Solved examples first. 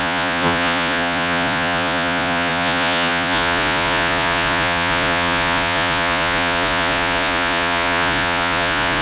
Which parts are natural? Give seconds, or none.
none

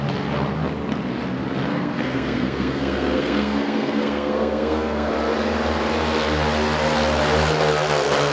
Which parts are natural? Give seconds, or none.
0.0-1.7; 5.1-8.3

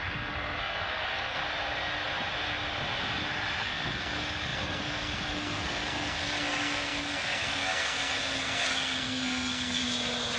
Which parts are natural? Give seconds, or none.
1.4-3.6; 9.8-10.4

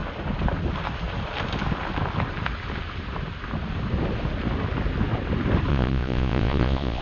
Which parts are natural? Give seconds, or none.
0.0-5.7

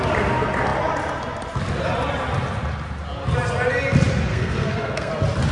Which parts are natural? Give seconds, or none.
0.0-4.3; 5.1-5.5

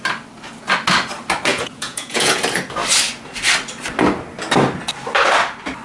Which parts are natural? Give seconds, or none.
0.0-1.5; 2.4-5.8

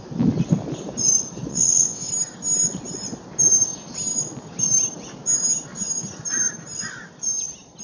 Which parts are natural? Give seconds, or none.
0.0-1.5; 2.1-7.8

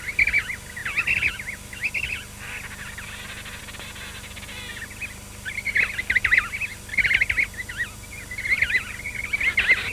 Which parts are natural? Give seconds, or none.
0.0-9.9